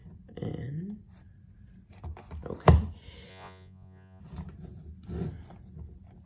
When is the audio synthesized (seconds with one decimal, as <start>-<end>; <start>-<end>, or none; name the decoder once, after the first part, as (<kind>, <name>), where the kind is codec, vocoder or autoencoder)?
3.3-4.2 (vocoder, Vocos)